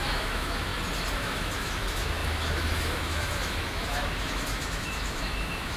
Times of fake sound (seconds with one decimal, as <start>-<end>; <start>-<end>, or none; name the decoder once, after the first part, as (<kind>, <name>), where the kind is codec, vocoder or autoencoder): 0.0-0.7 (autoencoder, DAC-VAE); 1.2-5.8